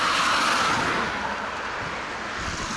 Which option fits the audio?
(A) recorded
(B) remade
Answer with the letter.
A